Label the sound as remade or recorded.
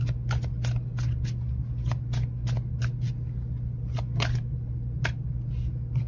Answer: recorded